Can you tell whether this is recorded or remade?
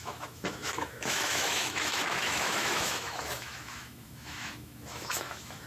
remade